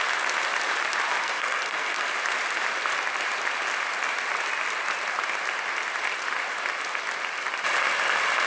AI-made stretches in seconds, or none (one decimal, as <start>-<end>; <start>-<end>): 1.2-2.1